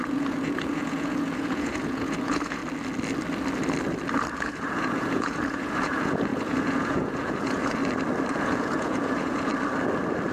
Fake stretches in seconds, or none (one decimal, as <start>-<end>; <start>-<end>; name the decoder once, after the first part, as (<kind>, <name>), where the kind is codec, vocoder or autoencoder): 0.0-2.6 (vocoder, Vocos); 4.4-7.8; 8.3-9.5